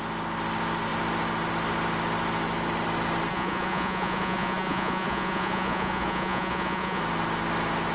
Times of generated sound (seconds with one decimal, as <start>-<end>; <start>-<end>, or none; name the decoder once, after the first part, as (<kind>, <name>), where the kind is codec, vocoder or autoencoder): 3.3-7.0 (vocoder, Vocos)

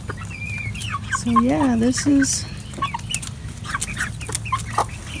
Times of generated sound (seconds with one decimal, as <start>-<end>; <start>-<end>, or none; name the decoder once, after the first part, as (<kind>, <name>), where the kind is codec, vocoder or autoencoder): none

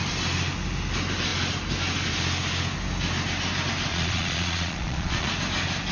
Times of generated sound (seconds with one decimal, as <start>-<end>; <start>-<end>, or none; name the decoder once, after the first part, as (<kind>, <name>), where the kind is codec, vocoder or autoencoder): 3.9-5.3 (vocoder, Vocos)

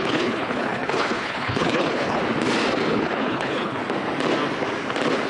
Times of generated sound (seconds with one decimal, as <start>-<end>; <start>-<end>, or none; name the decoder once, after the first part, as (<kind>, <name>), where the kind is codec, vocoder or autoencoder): 0.0-2.2 (codec, HILCodec); 2.9-3.8